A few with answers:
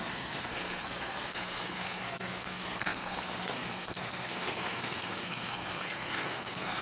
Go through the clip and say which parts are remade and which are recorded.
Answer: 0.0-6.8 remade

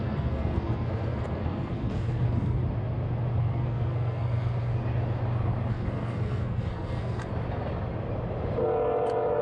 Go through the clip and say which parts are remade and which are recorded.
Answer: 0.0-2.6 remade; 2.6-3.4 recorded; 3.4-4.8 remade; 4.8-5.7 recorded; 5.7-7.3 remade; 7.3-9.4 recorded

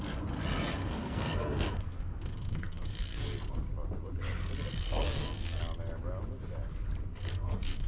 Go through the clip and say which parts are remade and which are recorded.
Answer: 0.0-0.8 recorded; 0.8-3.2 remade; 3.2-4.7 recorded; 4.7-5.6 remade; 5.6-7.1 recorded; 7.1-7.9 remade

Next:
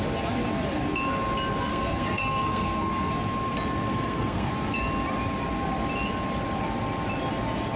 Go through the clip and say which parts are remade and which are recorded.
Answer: 0.0-1.7 recorded; 1.7-3.1 remade; 3.1-3.9 recorded; 3.9-4.5 remade; 4.5-7.8 recorded

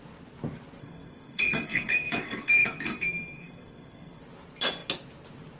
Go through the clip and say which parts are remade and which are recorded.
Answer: 0.0-0.8 recorded; 0.8-4.2 remade; 4.2-5.6 recorded

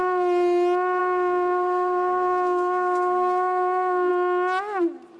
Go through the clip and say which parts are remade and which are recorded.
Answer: 0.0-1.0 recorded; 1.0-4.1 remade; 4.1-5.2 recorded